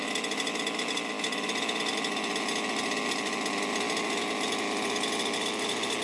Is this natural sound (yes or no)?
yes